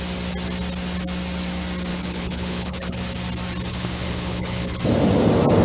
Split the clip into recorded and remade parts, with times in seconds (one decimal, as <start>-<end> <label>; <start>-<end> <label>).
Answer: 0.0-1.9 recorded; 1.9-3.0 remade; 3.0-3.7 recorded; 3.7-4.8 remade; 4.8-5.6 recorded